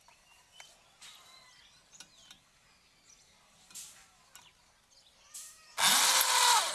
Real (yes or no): yes